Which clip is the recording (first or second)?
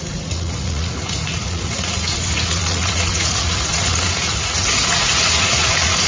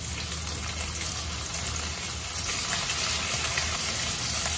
second